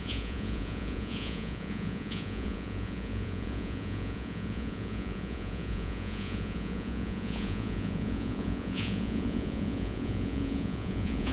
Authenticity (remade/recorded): remade